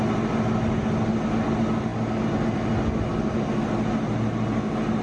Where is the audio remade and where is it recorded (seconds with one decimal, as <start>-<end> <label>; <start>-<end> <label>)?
0.0-5.0 recorded